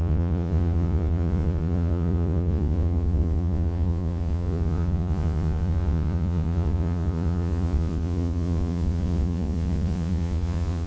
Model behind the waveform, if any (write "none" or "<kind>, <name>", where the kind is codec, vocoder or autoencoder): vocoder, Vocos